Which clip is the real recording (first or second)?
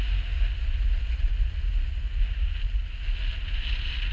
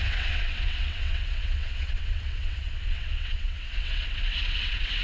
first